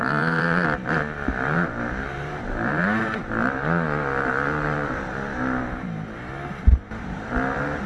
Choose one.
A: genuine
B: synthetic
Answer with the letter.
B